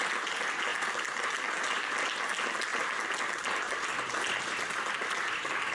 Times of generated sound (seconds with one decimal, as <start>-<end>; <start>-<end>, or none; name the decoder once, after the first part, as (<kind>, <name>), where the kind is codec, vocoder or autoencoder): none